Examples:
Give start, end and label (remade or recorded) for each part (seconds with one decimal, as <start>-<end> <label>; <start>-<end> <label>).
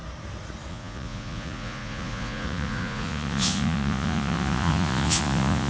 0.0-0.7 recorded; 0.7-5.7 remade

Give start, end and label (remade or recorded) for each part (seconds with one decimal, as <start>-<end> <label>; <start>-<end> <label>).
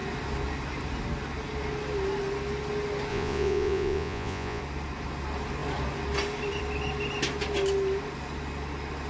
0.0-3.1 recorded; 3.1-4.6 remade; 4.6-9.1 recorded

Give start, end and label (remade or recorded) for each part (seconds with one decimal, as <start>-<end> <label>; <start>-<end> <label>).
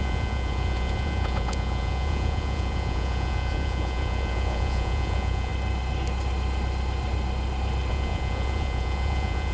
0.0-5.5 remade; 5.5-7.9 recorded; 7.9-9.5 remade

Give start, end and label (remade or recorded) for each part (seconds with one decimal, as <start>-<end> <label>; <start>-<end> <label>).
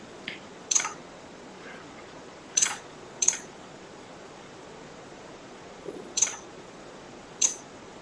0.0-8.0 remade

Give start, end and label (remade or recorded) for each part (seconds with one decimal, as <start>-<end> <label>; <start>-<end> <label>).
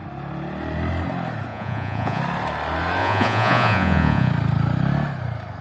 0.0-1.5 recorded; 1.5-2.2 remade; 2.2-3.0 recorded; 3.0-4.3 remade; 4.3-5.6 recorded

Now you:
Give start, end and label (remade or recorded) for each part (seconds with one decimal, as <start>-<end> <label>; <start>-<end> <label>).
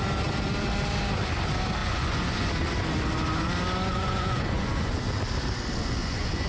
0.0-1.8 recorded; 1.8-2.5 remade; 2.5-3.9 recorded; 3.9-4.9 remade; 4.9-6.0 recorded; 6.0-6.5 remade